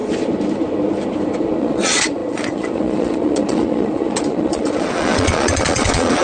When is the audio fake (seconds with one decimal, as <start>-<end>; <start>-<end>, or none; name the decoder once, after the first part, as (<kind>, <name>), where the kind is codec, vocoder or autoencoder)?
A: 1.6-6.2 (vocoder, Vocos)